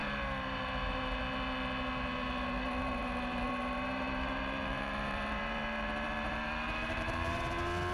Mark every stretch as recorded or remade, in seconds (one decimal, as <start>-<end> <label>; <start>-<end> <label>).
0.0-1.2 remade; 1.2-2.8 recorded; 2.8-7.5 remade; 7.5-7.9 recorded